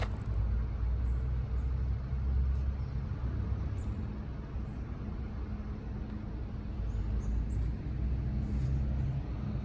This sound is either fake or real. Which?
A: real